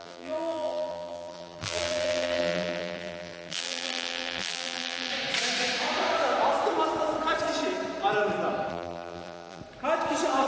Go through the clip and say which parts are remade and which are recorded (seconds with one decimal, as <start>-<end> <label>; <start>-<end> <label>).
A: 0.0-5.1 remade; 5.1-8.7 recorded; 8.7-9.6 remade; 9.6-10.5 recorded